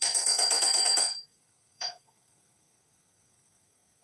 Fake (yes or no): yes